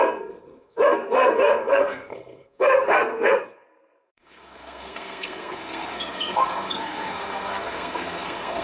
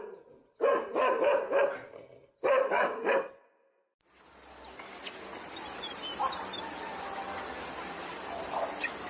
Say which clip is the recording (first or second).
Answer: second